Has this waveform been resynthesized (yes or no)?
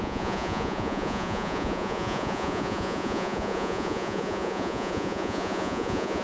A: yes